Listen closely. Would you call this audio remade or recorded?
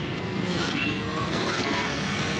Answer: remade